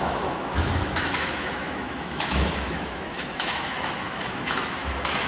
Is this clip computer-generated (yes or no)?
yes